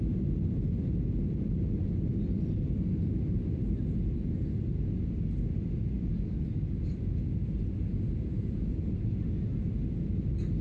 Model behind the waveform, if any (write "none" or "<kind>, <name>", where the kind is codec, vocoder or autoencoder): none